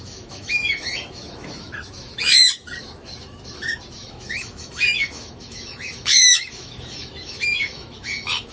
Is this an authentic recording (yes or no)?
no